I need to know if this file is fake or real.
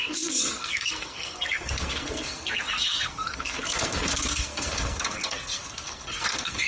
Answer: fake